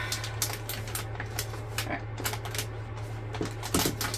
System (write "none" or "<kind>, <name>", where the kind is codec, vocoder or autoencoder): none